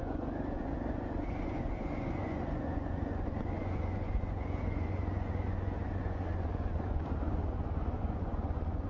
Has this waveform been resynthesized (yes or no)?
yes